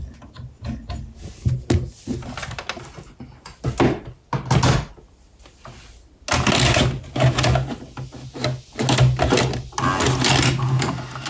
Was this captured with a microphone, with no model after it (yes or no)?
yes